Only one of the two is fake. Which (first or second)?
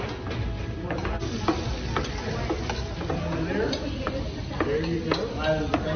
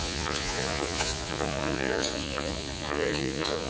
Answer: second